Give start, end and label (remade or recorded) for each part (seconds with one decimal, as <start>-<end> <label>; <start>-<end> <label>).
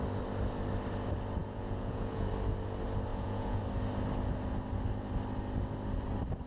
0.0-1.4 recorded; 1.4-2.3 remade; 2.3-3.1 recorded; 3.1-3.6 remade; 3.6-6.5 recorded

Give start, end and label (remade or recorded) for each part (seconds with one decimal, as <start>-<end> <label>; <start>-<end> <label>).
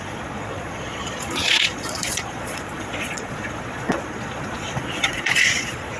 0.0-6.0 remade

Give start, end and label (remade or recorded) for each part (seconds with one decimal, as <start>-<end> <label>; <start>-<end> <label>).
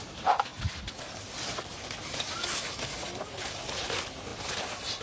0.0-5.0 recorded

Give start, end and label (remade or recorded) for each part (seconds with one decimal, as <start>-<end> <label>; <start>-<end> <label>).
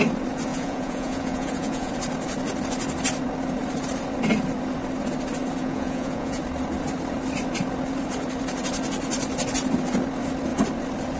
0.0-0.5 recorded; 0.5-1.9 remade; 1.9-5.6 recorded; 5.6-6.4 remade; 6.4-11.2 recorded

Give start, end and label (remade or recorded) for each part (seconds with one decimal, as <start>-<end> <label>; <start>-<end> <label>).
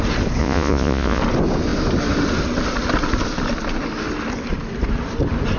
0.0-0.4 recorded; 0.4-1.2 remade; 1.2-5.6 recorded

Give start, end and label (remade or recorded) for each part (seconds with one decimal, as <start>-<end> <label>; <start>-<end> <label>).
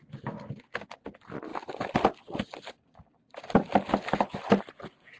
0.0-5.2 recorded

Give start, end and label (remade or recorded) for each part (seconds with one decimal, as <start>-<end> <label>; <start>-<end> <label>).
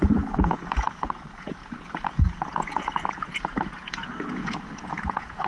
0.0-5.5 remade